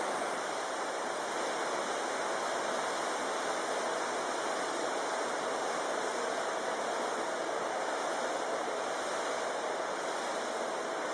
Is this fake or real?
real